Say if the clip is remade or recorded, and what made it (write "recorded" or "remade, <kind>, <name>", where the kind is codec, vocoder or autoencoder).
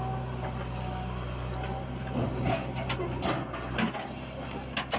recorded